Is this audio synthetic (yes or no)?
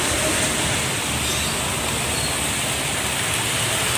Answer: no